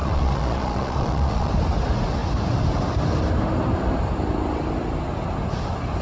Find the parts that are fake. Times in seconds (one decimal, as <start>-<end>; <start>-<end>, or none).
0.0-1.5